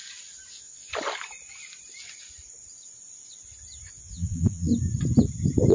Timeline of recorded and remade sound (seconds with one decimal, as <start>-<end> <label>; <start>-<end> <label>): 0.0-0.5 recorded; 0.5-0.9 remade; 0.9-3.9 recorded; 3.9-4.7 remade; 4.7-5.7 recorded